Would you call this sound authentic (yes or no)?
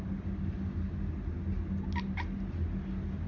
yes